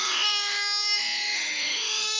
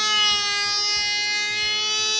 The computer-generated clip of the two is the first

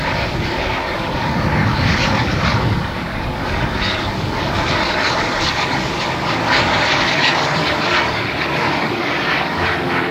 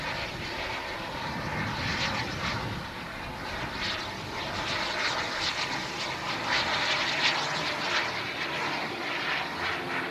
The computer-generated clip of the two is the first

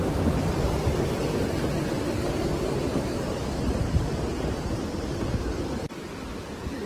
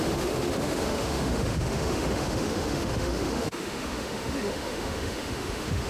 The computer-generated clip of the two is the second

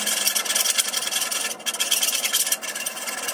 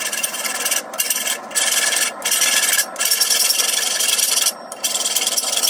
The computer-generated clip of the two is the second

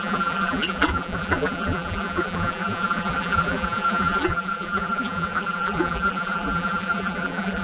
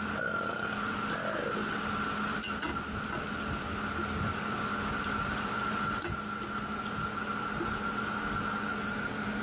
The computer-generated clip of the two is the first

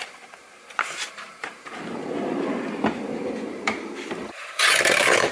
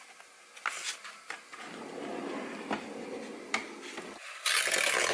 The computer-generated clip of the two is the first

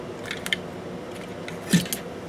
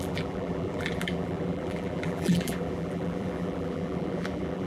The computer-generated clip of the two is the second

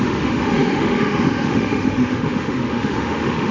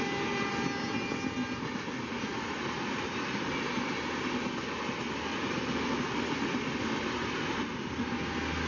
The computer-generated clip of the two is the first